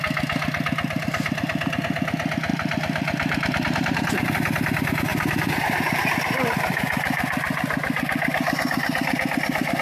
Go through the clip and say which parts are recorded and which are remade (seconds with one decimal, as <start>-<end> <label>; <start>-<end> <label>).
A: 0.0-2.5 recorded; 2.5-4.3 remade; 4.3-5.1 recorded; 5.1-5.8 remade; 5.8-9.8 recorded